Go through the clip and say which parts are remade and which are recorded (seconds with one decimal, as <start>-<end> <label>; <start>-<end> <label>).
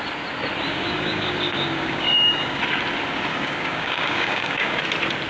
0.0-0.7 recorded; 0.7-2.6 remade; 2.6-3.3 recorded; 3.3-4.8 remade; 4.8-5.3 recorded